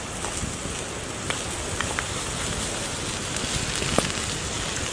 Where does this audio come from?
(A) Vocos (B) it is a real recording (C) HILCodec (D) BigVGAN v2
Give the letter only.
B